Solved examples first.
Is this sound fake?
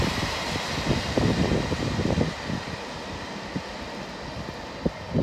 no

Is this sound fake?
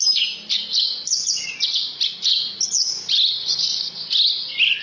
no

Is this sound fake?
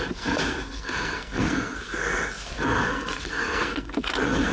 yes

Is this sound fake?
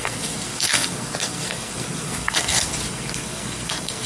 yes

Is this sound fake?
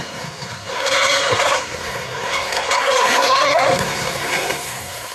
yes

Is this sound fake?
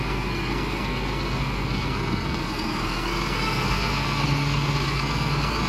yes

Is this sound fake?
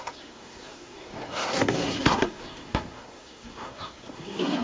yes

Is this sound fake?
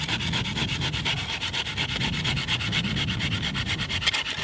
no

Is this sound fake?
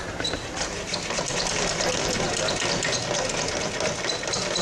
no